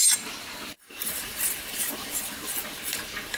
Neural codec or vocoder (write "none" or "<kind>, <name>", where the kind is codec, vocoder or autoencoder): vocoder, BigVGAN v2